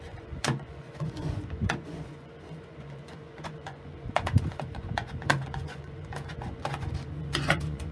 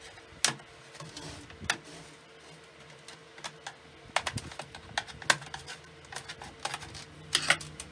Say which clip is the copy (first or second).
first